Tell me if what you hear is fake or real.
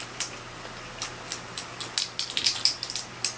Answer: real